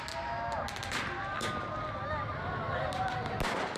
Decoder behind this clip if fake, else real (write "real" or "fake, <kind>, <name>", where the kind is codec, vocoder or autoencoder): real